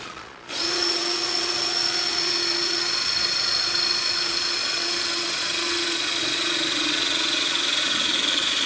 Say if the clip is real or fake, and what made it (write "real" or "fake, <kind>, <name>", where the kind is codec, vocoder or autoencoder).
fake, vocoder, Vocos